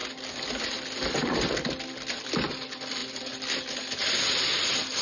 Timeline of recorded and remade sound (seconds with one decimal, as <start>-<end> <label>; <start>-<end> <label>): 0.0-5.0 recorded